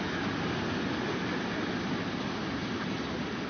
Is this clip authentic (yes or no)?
yes